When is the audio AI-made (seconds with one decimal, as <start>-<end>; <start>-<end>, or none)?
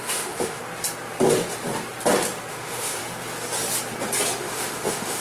0.0-0.6; 2.5-3.0; 4.4-5.2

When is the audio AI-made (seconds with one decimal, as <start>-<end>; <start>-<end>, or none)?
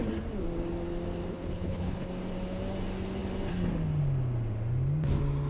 1.3-2.1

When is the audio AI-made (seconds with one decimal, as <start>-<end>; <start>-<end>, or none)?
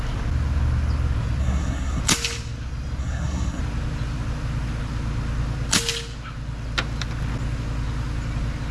1.4-2.0; 3.0-3.6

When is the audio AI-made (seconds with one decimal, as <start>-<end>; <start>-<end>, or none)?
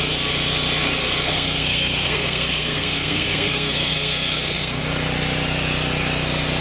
1.0-4.8